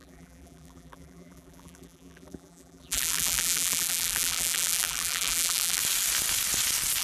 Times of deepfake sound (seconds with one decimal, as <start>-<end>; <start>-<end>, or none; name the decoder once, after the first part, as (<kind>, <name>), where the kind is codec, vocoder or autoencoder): 0.0-5.8 (vocoder, BigVGAN v2)

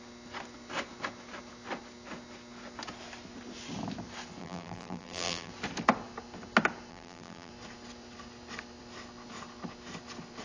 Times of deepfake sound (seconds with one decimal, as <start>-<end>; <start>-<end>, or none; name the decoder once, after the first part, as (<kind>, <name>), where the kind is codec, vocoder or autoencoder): 4.4-5.5 (vocoder, BigVGAN v2); 6.9-7.5

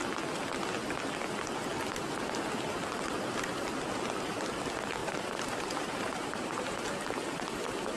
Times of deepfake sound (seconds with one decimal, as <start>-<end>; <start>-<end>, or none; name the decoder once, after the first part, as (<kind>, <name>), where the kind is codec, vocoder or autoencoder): 5.0-6.9 (vocoder, BigVGAN v2)

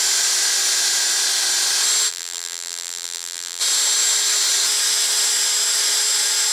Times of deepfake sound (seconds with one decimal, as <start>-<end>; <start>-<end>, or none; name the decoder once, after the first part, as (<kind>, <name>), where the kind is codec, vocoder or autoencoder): 2.1-3.6 (vocoder, BigVGAN v2)

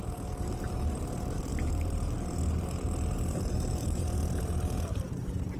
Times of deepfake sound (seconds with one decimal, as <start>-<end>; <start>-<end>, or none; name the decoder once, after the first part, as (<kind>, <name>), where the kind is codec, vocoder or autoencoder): 0.0-4.2 (vocoder, BigVGAN v2); 5.1-5.6

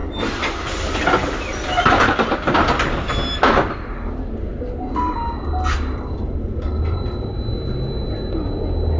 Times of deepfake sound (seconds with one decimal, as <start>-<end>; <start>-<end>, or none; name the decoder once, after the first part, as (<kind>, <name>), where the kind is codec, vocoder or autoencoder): none

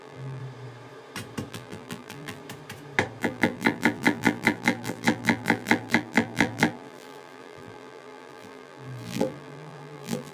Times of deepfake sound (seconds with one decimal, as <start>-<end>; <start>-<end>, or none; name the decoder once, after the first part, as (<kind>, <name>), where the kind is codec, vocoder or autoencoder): 0.0-0.4 (vocoder, BigVGAN v2); 1.5-2.4; 3.2-10.3